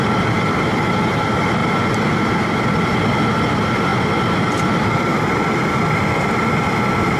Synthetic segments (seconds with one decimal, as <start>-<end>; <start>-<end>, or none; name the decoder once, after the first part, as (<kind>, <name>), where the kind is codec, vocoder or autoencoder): 0.0-1.6 (vocoder, BigVGAN v2); 2.3-3.9; 4.6-7.2